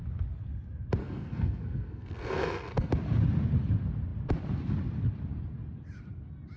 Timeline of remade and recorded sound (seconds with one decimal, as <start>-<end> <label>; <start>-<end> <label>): 0.0-1.0 recorded; 1.0-2.9 remade; 2.9-6.6 recorded